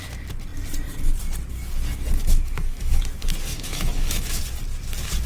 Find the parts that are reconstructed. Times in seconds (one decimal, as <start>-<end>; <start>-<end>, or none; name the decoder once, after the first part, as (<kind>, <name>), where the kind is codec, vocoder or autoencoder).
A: 2.2-3.0 (autoencoder, DAC-VAE); 3.5-4.4